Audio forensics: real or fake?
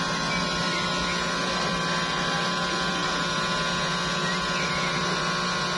real